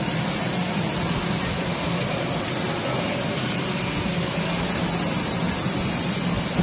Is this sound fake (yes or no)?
no